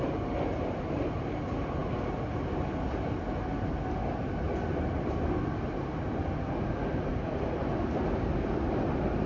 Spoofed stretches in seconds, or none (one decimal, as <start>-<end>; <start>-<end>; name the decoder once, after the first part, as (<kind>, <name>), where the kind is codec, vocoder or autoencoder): none